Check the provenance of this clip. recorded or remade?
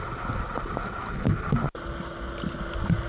recorded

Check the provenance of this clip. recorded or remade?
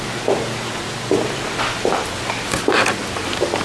recorded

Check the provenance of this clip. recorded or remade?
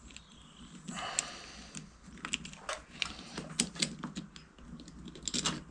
recorded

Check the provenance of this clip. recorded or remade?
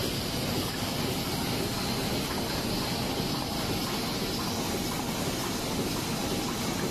recorded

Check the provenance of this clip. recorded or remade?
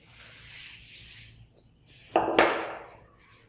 recorded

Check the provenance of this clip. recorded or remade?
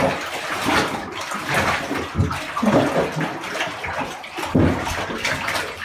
recorded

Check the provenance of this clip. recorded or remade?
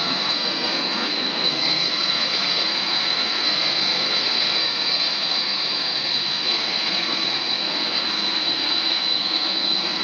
remade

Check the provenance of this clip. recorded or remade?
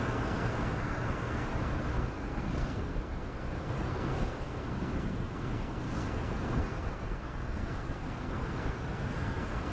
remade